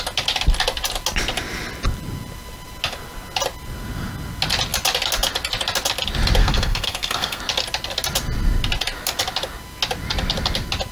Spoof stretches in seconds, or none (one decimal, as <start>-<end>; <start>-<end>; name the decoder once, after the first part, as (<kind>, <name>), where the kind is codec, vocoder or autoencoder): 6.4-7.4 (codec, SNAC)